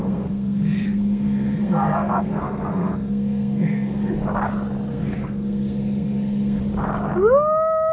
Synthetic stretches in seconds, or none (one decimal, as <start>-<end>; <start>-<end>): 0.0-4.1; 4.9-6.6